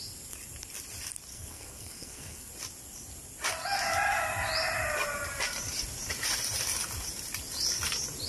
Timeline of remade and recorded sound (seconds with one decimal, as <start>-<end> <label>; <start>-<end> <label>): 0.0-1.3 recorded; 1.3-2.5 remade; 2.5-8.3 recorded